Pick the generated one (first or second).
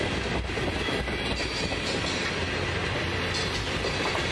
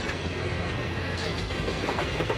second